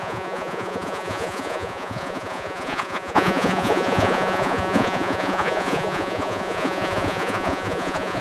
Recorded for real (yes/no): no